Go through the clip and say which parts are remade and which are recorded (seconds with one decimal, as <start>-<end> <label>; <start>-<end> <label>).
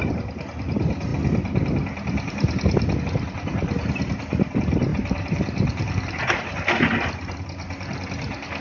0.0-4.9 recorded; 4.9-6.3 remade; 6.3-8.6 recorded